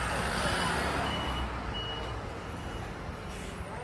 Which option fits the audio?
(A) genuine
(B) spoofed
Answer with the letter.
A